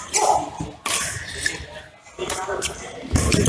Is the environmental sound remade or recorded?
recorded